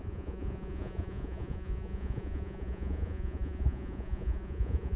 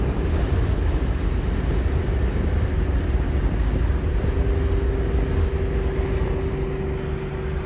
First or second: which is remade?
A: first